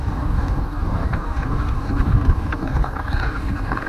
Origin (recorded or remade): remade